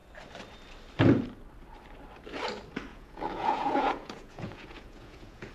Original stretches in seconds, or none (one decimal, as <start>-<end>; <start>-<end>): 0.0-2.9